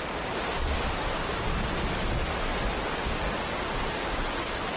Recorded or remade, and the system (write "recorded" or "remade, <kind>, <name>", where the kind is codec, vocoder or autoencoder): recorded